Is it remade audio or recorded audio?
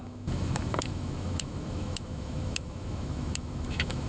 remade